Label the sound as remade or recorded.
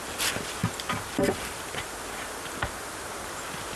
recorded